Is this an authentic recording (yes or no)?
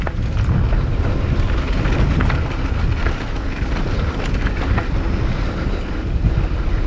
yes